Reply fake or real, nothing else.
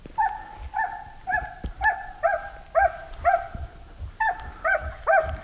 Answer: real